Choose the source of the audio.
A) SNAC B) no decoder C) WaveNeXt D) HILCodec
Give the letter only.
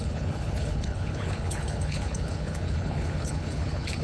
D